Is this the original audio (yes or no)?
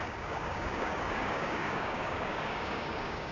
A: no